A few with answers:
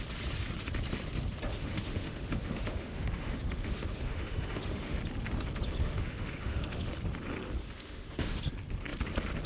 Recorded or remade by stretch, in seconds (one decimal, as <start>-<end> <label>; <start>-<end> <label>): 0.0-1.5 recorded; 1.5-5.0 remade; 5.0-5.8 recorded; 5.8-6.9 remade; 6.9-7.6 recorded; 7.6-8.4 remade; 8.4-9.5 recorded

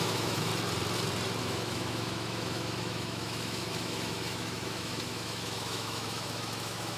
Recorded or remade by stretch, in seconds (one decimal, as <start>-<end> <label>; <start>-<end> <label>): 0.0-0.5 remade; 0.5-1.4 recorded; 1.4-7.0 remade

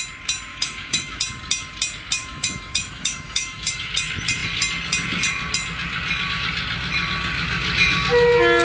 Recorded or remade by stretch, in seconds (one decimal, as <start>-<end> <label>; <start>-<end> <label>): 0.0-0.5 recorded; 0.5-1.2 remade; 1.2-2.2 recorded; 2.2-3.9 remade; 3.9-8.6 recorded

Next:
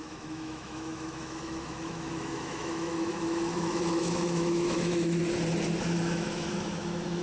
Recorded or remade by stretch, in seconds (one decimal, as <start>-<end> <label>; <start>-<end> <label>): 0.0-5.2 remade; 5.2-5.8 recorded; 5.8-7.2 remade

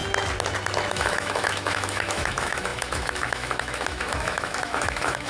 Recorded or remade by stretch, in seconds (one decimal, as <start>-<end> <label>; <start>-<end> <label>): 0.0-0.9 recorded; 0.9-5.3 remade

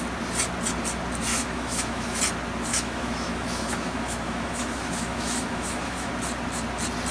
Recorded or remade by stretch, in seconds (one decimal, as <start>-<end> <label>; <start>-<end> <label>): 0.0-1.3 recorded; 1.3-2.2 remade; 2.2-2.7 recorded; 2.7-6.1 remade; 6.1-7.1 recorded

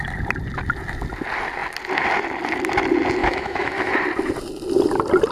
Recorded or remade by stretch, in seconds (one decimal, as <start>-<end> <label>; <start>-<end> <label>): 0.0-3.2 recorded; 3.2-3.9 remade; 3.9-5.3 recorded

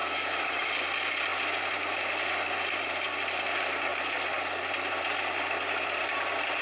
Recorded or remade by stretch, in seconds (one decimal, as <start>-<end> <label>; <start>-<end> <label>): 0.0-0.7 remade; 0.7-6.6 recorded